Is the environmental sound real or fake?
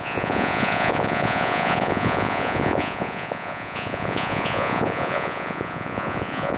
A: fake